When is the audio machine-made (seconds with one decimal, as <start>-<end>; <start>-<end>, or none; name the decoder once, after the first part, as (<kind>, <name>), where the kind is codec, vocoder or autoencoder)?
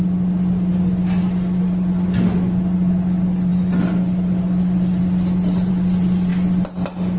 none